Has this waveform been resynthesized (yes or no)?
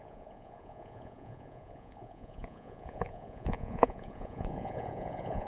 yes